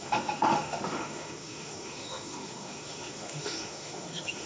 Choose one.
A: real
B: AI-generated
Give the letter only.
B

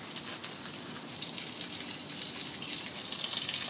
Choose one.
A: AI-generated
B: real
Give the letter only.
B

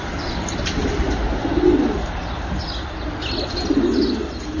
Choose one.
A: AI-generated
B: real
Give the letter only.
B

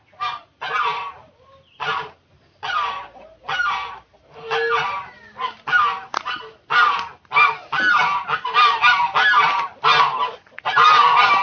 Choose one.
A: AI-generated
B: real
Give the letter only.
B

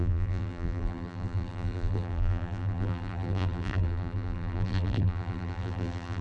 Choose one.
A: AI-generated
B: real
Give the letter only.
A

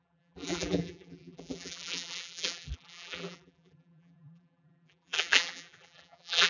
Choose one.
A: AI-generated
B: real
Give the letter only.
A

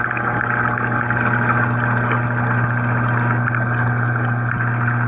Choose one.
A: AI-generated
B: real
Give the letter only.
B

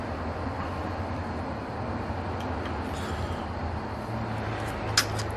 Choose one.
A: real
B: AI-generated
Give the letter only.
A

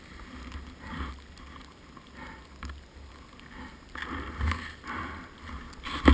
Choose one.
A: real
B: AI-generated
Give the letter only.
A